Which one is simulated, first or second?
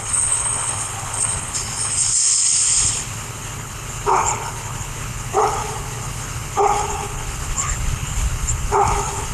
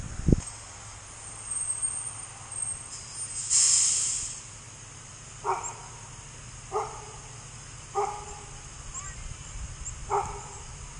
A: first